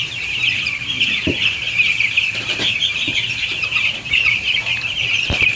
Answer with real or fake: fake